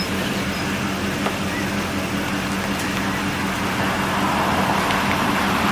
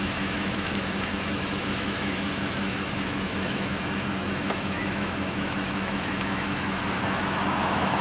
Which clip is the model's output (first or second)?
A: second